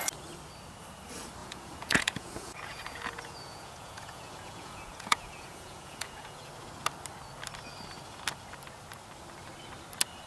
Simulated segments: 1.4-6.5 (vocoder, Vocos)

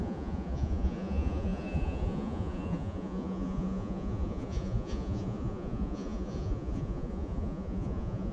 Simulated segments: 0.0-8.3 (vocoder, Vocos)